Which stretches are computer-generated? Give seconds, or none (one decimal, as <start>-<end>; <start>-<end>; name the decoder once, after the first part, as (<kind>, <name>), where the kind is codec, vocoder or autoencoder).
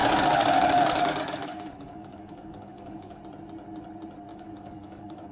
0.0-3.2 (codec, DAC); 4.3-5.3